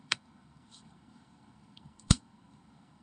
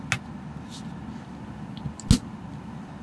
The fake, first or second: first